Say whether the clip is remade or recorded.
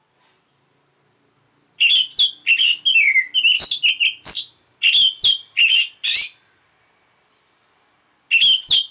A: recorded